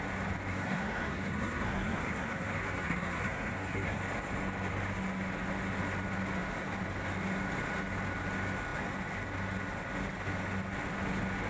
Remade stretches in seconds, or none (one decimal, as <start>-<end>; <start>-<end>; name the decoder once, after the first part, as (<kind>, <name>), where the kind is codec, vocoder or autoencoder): 0.5-4.0 (codec, SNAC)